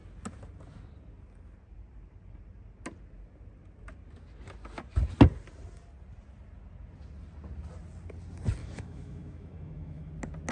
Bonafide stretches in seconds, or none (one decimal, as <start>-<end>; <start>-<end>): 0.0-8.6; 10.1-10.5